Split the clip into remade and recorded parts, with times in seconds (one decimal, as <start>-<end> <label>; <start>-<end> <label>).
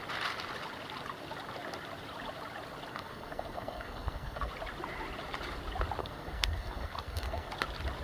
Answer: 0.0-2.9 recorded; 2.9-4.5 remade; 4.5-6.0 recorded; 6.0-7.5 remade; 7.5-8.0 recorded